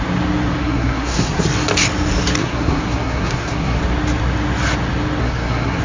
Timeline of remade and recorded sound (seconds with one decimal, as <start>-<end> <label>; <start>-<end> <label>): 0.0-0.6 recorded; 0.6-1.4 remade; 1.4-2.4 recorded; 2.4-3.8 remade; 3.8-5.2 recorded; 5.2-5.8 remade